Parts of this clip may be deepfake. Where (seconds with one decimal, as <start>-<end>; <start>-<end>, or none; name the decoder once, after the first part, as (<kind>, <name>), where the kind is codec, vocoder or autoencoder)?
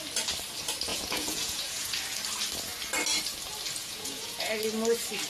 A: 0.9-2.0 (vocoder, Vocos); 3.8-4.5